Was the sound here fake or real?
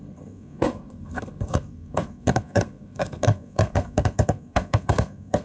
fake